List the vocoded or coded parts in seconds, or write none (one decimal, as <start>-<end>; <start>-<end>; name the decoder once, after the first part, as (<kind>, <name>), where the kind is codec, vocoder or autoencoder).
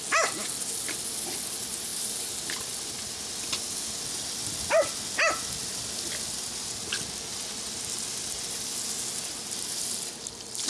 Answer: none